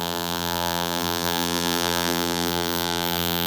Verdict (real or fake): fake